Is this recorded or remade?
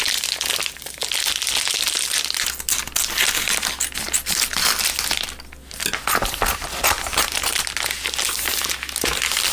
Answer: recorded